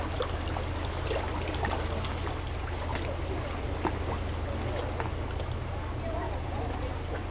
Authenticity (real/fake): real